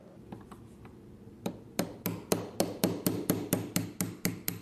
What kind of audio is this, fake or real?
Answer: real